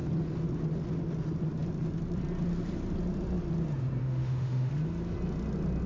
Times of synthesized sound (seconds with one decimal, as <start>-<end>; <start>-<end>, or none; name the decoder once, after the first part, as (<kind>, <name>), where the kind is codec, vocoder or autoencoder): 4.0-4.7 (autoencoder, DAC-VAE)